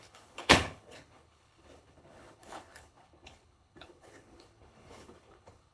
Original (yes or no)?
no